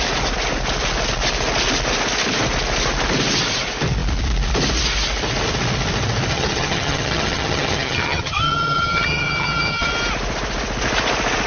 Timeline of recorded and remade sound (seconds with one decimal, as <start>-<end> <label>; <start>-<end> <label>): 0.0-6.3 recorded; 6.3-9.9 remade; 9.9-11.5 recorded